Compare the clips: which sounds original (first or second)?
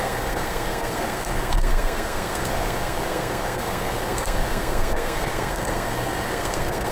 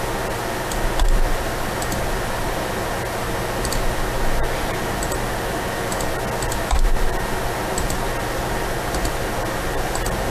second